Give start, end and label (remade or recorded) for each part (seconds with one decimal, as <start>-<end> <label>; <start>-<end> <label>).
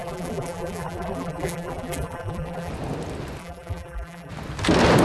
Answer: 0.0-2.7 remade; 2.7-3.4 recorded; 3.4-4.3 remade; 4.3-5.0 recorded